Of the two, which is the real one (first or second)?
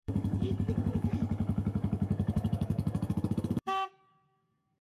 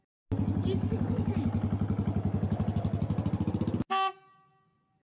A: second